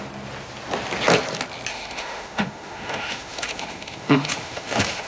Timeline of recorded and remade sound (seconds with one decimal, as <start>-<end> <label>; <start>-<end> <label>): 0.0-1.7 recorded; 1.7-5.1 remade